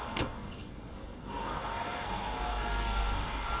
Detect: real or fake fake